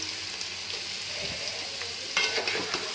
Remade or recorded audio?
recorded